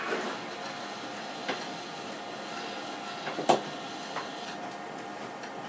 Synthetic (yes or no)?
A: no